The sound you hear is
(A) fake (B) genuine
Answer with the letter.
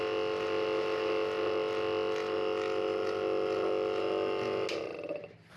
B